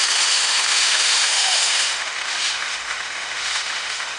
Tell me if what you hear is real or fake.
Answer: fake